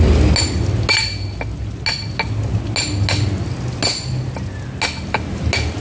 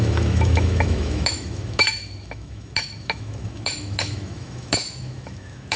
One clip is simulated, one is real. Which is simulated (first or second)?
second